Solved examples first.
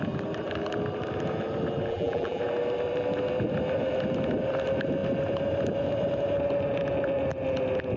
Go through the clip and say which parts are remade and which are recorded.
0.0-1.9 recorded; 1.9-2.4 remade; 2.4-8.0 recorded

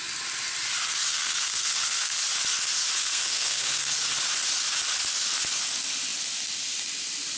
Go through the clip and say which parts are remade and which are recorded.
0.0-1.1 recorded; 1.1-2.2 remade; 2.2-3.0 recorded; 3.0-3.9 remade; 3.9-7.4 recorded

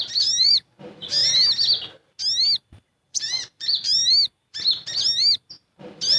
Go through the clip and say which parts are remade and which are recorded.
0.0-1.2 remade; 1.2-2.9 recorded; 2.9-4.0 remade; 4.0-4.5 recorded; 4.5-6.2 remade

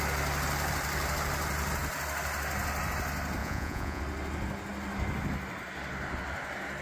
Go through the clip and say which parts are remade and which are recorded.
0.0-3.4 recorded; 3.4-4.0 remade; 4.0-6.8 recorded

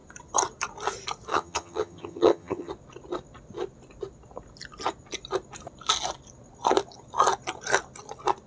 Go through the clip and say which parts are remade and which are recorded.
0.0-1.3 recorded; 1.3-2.7 remade; 2.7-8.5 recorded

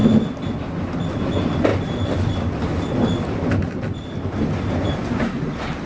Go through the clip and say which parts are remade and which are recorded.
0.0-5.9 recorded

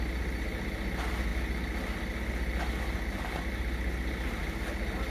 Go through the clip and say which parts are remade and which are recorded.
0.0-5.1 recorded